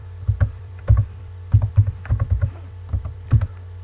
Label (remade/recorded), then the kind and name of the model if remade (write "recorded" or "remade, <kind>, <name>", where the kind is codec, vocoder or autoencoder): remade, vocoder, BigVGAN v2